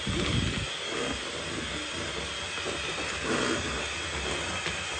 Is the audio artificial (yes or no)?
no